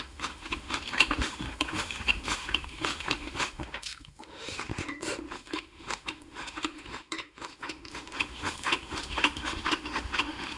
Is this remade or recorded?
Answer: remade